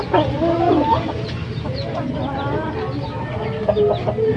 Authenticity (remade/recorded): recorded